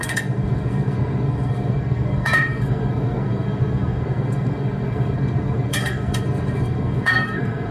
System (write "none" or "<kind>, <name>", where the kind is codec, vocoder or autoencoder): codec, SNAC